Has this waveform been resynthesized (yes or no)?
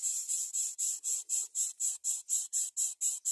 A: no